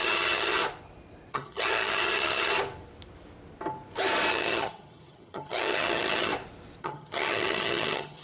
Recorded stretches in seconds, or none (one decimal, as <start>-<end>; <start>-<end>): 0.6-1.3; 2.5-4.3; 6.3-6.8